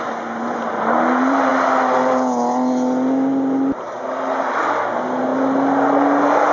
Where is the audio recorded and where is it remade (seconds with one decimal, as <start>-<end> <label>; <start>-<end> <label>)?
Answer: 0.0-6.5 recorded

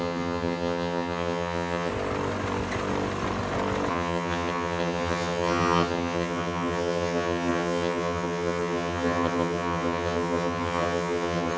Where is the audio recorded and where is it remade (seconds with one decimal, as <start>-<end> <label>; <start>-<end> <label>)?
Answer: 0.0-1.9 remade; 1.9-3.9 recorded; 3.9-11.6 remade

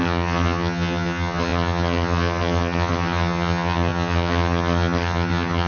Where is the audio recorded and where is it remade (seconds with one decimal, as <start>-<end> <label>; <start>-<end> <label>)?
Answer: 0.0-5.7 remade

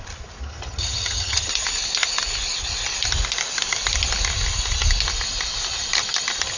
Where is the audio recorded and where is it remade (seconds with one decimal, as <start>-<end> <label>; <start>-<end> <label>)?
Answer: 0.0-0.4 recorded; 0.4-1.5 remade; 1.5-6.6 recorded

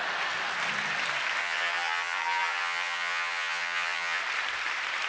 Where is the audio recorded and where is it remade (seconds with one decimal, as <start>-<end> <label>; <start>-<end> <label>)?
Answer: 0.0-1.4 recorded; 1.4-4.2 remade; 4.2-5.1 recorded

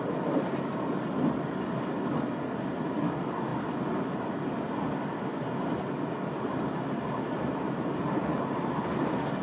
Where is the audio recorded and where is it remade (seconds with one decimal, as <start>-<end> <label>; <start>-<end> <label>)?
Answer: 0.0-9.4 recorded